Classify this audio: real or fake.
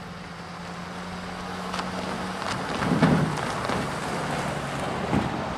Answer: real